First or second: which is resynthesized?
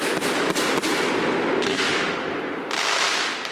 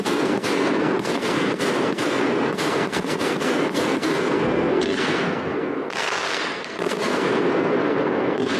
second